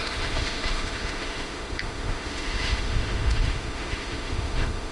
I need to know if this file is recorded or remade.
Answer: remade